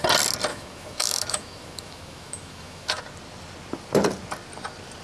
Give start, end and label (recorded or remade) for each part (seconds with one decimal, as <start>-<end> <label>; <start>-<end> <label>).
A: 0.0-0.5 recorded; 0.5-3.0 remade; 3.0-5.0 recorded